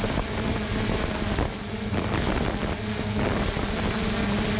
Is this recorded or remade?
recorded